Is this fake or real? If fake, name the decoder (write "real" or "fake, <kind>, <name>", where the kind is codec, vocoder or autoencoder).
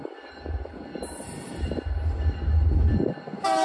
real